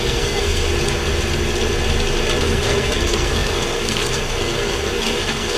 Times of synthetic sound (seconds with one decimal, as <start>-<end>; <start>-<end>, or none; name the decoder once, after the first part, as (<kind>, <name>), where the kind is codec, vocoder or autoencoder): 0.0-0.7 (codec, SNAC); 2.4-5.6